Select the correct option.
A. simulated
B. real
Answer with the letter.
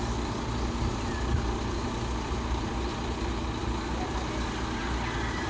B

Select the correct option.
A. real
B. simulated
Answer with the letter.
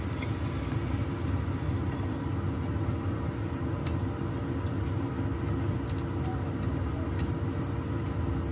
A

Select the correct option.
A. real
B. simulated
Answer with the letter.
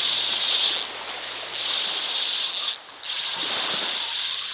A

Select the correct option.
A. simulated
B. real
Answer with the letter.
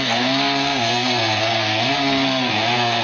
A